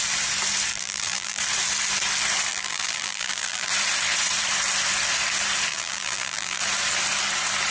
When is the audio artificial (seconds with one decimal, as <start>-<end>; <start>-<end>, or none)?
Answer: 0.7-1.4; 2.5-3.7; 5.7-6.6